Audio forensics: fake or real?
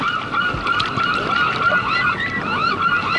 real